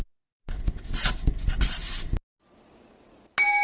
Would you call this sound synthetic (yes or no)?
no